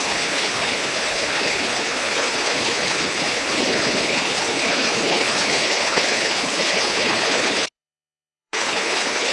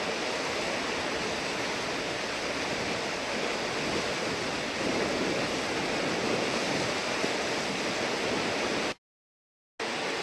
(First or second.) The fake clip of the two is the first